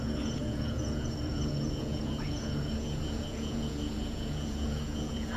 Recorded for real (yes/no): no